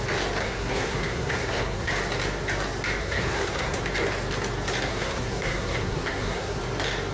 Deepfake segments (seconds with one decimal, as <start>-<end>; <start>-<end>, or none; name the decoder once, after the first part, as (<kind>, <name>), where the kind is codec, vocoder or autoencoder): 0.4-1.9 (codec, SNAC); 3.0-3.8; 4.9-6.6